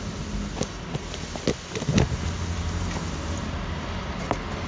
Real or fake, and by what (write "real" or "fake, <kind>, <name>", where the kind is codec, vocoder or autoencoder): real